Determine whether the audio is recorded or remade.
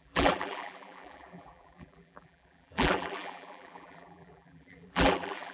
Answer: remade